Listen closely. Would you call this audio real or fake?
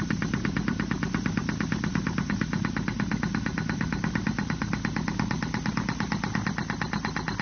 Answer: real